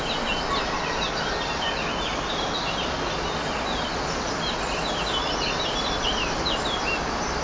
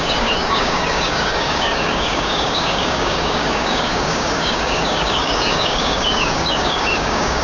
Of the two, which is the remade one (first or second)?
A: second